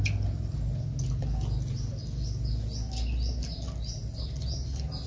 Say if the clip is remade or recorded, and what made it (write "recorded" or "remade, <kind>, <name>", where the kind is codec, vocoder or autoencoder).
recorded